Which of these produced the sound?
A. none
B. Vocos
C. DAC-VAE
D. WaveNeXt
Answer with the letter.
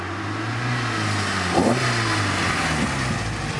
A